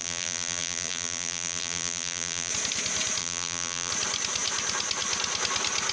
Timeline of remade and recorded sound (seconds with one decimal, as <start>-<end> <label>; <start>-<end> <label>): 0.0-2.5 remade; 2.5-3.2 recorded; 3.2-3.9 remade; 3.9-5.9 recorded